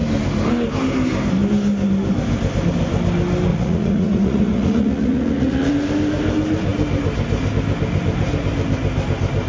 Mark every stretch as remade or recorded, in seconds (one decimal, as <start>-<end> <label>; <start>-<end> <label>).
0.0-3.5 recorded; 3.5-5.7 remade; 5.7-9.5 recorded